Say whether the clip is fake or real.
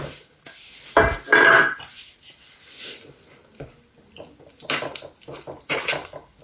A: real